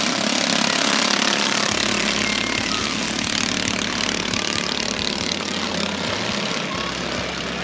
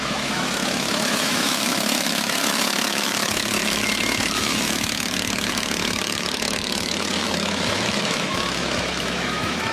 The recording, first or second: first